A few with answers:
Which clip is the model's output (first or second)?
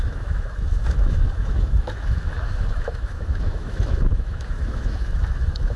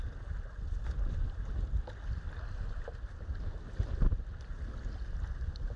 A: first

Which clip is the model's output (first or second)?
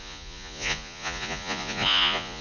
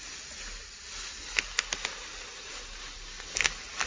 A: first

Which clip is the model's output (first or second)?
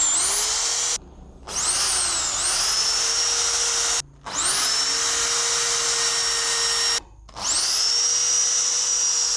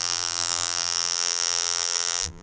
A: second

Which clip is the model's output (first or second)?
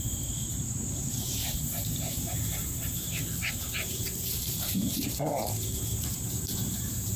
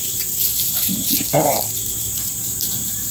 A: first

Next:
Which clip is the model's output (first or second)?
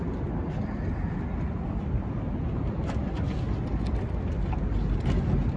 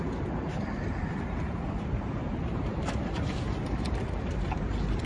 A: second